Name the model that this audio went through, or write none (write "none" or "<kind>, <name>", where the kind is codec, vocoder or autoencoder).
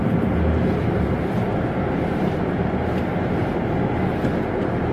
none